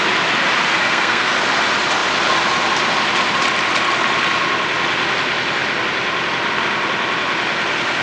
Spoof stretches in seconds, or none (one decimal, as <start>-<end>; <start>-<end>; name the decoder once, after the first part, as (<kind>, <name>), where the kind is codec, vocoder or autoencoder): 0.7-1.3 (codec, SNAC)